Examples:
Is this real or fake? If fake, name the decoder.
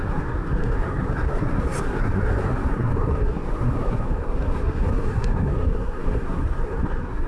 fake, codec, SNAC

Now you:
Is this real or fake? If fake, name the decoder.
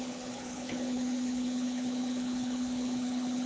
fake, codec, HILCodec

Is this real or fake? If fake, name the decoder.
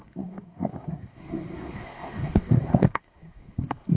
fake, codec, SNAC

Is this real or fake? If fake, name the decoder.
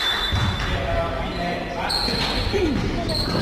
real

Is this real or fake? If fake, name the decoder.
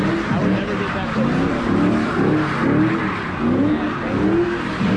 real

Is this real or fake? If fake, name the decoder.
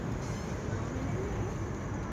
real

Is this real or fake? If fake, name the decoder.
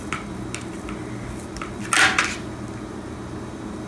real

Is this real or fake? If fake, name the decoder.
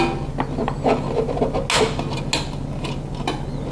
real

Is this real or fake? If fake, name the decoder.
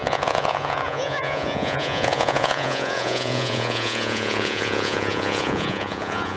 fake, vocoder, Vocos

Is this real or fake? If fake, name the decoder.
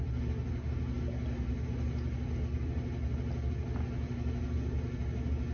real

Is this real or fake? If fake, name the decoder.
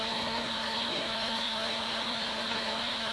fake, codec, SNAC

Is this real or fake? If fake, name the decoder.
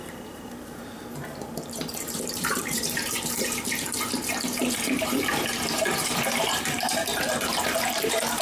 fake, vocoder, BigVGAN v2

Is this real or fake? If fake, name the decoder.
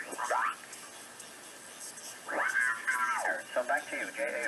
real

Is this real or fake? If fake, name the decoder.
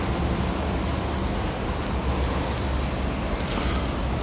real